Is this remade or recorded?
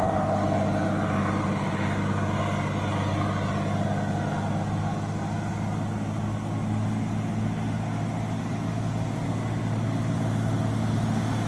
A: recorded